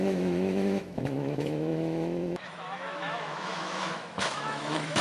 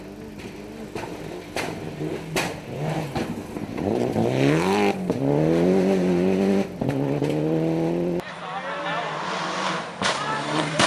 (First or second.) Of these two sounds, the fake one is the first